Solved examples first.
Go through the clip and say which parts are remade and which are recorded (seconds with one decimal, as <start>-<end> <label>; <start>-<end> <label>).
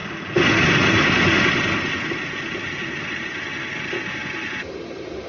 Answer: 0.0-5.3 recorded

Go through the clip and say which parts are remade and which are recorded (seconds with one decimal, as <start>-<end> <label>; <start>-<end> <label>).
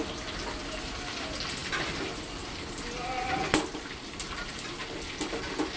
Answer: 0.0-5.8 recorded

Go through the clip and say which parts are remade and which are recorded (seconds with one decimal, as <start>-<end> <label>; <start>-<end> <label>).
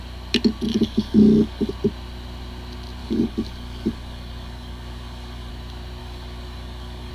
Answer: 0.0-0.7 recorded; 0.7-1.7 remade; 1.7-3.0 recorded; 3.0-5.5 remade; 5.5-6.0 recorded; 6.0-7.1 remade